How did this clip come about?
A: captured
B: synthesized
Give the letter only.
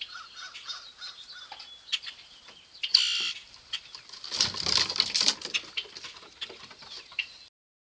A